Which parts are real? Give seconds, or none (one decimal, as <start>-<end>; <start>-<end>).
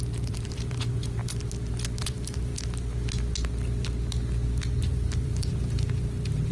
1.2-2.0; 2.5-4.8